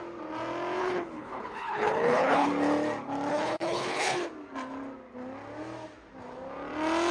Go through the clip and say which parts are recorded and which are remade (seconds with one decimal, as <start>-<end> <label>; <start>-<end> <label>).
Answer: 0.0-0.8 recorded; 0.8-2.5 remade; 2.5-3.3 recorded; 3.3-4.3 remade; 4.3-7.1 recorded